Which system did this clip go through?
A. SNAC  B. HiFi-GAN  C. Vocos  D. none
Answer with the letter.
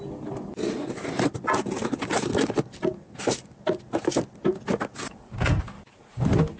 D